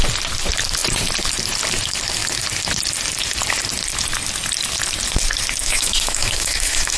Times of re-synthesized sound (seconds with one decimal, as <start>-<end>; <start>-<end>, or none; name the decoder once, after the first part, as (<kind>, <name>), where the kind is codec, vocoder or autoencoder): 5.6-7.0 (autoencoder, DAC-VAE)